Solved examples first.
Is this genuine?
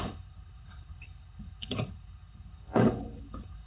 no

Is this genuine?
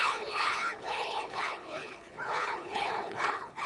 no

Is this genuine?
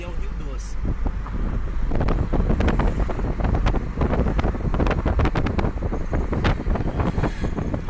yes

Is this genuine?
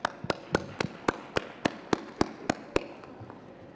yes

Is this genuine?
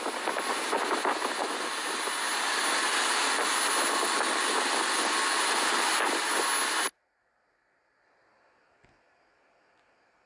yes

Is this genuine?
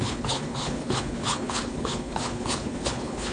no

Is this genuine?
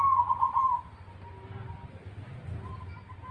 yes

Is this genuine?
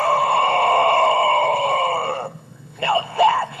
no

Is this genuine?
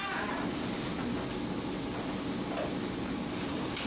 yes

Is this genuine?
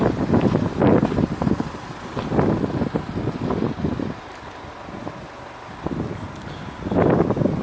yes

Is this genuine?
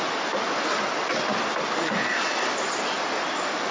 yes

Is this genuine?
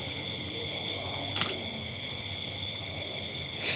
no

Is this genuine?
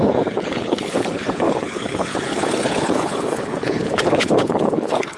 no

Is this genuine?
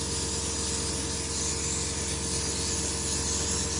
yes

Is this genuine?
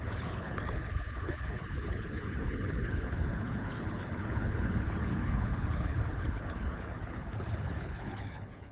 no